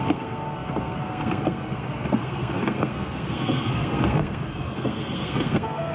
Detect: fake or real fake